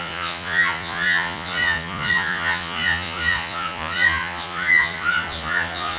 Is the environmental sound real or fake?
fake